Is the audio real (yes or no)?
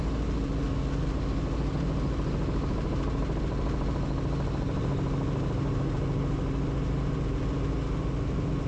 yes